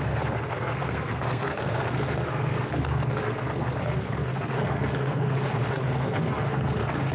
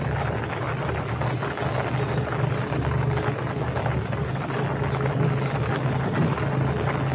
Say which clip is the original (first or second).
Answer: second